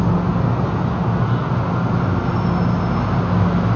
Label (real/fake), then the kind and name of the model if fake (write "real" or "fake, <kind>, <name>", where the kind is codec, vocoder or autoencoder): real